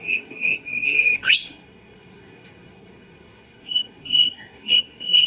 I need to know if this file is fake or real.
fake